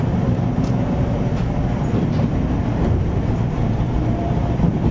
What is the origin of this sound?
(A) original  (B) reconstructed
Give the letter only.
B